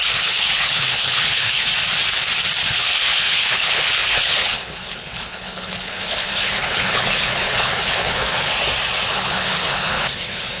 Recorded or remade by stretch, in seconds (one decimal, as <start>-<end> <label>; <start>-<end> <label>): 0.0-1.7 remade; 1.7-2.7 recorded; 2.7-8.5 remade; 8.5-9.1 recorded; 9.1-10.6 remade